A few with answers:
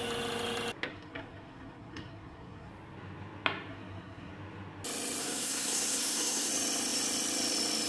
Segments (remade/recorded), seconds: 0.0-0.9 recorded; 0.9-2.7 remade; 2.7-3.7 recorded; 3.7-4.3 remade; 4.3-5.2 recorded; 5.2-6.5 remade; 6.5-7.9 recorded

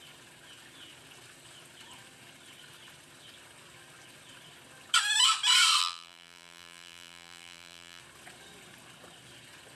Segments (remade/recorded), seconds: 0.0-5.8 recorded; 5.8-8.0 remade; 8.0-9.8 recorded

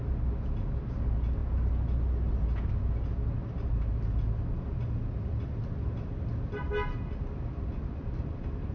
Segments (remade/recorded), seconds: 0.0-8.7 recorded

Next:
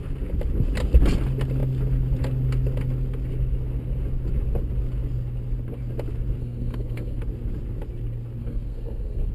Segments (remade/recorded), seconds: 0.0-6.4 recorded; 6.4-7.2 remade; 7.2-8.4 recorded; 8.4-9.3 remade

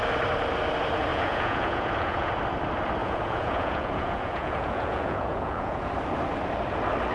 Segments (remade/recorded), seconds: 0.0-1.1 recorded; 1.1-2.3 remade; 2.3-3.0 recorded; 3.0-5.9 remade; 5.9-7.1 recorded

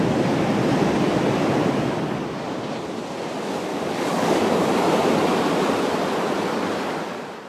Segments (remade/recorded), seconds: 0.0-3.7 recorded; 3.7-4.4 remade; 4.4-7.5 recorded